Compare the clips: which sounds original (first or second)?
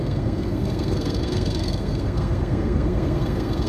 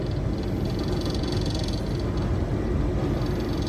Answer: second